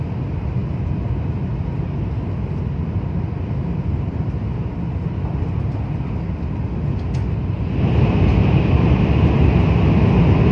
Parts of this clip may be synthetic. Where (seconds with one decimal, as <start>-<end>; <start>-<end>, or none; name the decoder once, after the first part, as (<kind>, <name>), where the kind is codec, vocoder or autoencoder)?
none